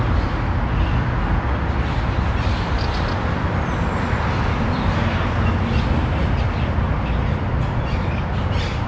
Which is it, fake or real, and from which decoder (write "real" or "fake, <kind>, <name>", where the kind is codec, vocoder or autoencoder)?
real